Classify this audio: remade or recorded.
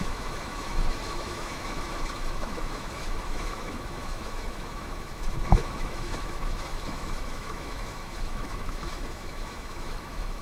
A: remade